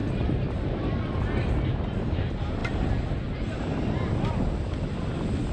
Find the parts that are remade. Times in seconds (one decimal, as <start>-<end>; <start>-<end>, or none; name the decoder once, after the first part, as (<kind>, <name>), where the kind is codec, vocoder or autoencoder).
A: none